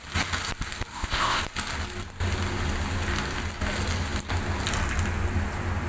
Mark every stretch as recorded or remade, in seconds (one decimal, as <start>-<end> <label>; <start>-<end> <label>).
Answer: 0.0-0.9 recorded; 0.9-1.4 remade; 1.4-5.9 recorded